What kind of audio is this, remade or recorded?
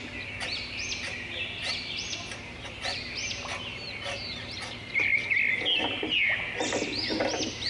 recorded